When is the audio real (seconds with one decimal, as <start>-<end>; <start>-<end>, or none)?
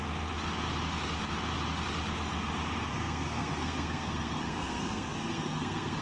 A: 0.0-2.9